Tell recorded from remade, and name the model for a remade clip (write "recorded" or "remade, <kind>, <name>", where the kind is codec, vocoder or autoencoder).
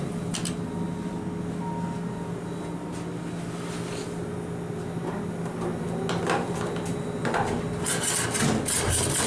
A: recorded